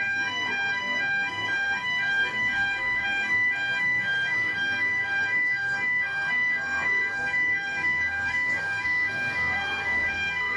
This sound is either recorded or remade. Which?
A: remade